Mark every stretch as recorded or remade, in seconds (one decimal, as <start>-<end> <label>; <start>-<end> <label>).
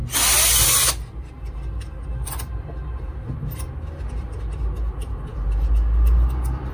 0.0-6.7 recorded